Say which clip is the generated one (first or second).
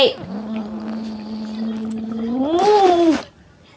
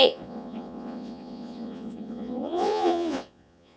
second